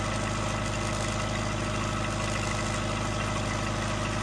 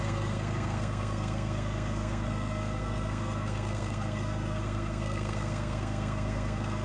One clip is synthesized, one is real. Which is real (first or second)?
first